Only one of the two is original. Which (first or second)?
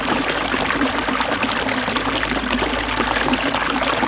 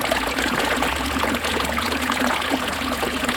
first